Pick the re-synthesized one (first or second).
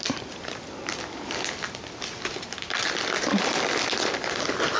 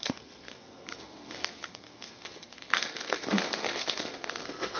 second